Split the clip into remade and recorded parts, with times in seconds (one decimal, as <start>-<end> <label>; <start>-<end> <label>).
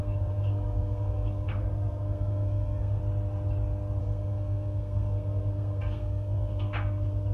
0.0-3.0 remade; 3.0-4.0 recorded; 4.0-7.3 remade